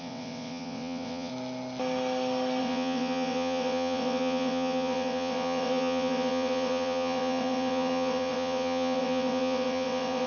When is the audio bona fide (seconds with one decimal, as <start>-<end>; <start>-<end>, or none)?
1.3-2.6